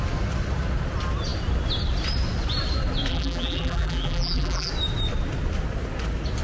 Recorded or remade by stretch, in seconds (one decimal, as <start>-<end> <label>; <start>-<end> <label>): 0.0-3.1 recorded; 3.1-4.7 remade; 4.7-6.4 recorded